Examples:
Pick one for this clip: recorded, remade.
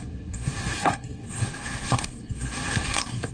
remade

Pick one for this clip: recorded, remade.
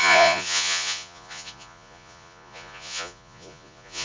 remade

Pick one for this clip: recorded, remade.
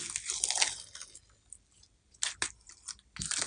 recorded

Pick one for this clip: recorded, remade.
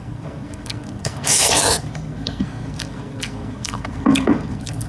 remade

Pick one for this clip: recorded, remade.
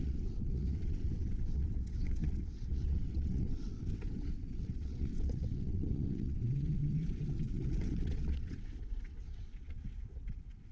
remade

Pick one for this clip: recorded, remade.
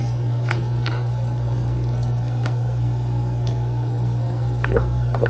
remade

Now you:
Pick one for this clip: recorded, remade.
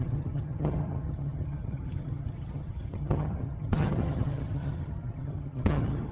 remade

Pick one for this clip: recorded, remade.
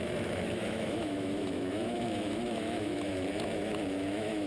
remade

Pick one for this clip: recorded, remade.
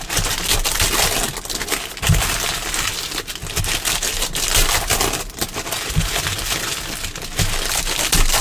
recorded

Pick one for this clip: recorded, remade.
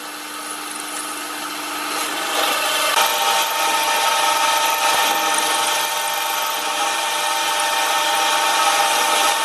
recorded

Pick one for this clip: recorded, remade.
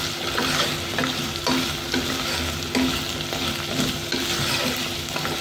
recorded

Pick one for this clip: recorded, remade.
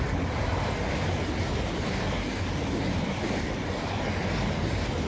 recorded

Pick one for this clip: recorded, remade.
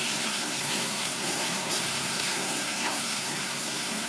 remade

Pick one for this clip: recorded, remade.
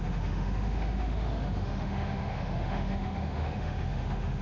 remade